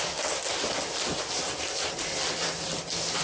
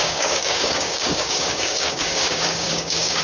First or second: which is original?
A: first